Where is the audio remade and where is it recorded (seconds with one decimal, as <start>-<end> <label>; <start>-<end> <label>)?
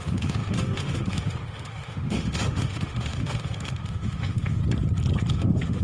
0.0-4.6 remade; 4.6-5.3 recorded; 5.3-5.8 remade